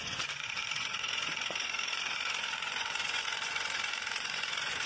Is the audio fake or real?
fake